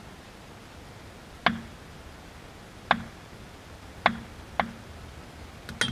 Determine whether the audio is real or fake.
real